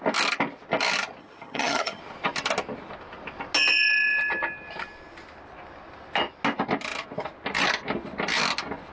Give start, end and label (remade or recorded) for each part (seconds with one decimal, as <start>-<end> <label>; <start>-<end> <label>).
0.0-1.2 recorded; 1.2-2.0 remade; 2.0-8.9 recorded